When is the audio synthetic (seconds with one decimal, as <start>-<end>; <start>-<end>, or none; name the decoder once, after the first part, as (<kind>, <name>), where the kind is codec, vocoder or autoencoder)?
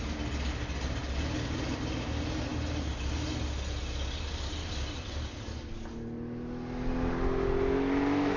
none